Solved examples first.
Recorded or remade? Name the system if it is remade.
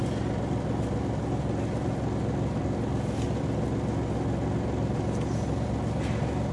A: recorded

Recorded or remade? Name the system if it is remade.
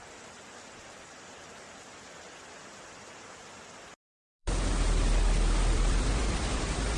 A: remade, vocoder, BigVGAN v2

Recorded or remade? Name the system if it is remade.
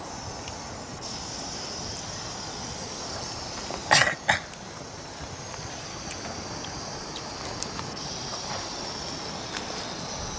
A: recorded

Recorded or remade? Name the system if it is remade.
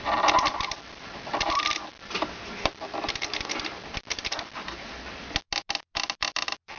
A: recorded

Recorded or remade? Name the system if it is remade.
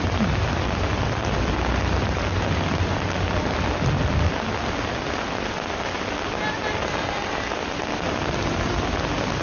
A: recorded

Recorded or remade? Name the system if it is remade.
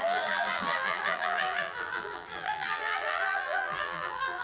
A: remade, vocoder, BigVGAN v2